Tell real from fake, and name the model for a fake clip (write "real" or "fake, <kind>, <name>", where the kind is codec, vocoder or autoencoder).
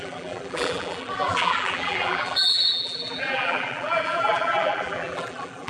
fake, vocoder, BigVGAN v2